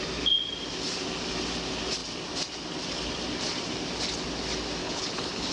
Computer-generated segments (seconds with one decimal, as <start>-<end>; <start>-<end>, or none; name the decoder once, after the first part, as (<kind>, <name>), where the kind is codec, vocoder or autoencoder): 4.8-5.5 (codec, HILCodec)